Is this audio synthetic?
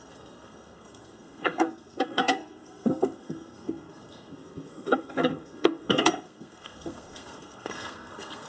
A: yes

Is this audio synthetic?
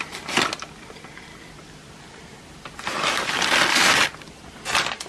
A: no